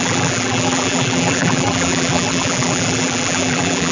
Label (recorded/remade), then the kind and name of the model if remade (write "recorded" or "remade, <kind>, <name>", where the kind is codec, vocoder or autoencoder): remade, vocoder, BigVGAN v2